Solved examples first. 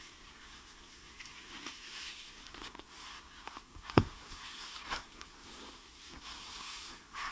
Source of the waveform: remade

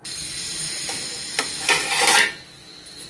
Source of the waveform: recorded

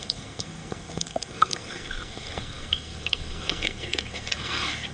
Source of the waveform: remade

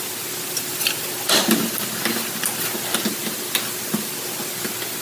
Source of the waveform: recorded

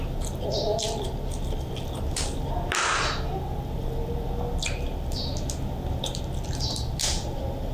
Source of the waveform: recorded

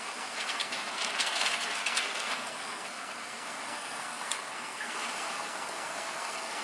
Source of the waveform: remade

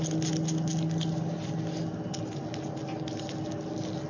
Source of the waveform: recorded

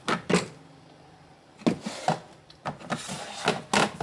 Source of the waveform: recorded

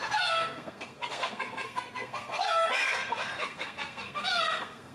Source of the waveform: remade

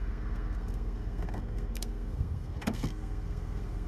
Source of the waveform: remade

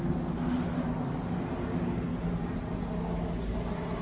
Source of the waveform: recorded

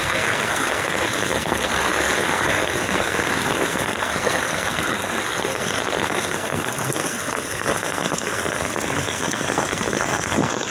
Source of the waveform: remade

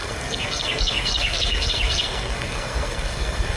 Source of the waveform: remade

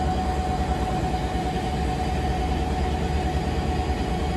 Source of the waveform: recorded